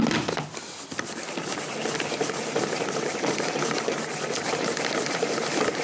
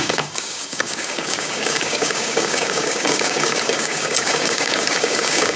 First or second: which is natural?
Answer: first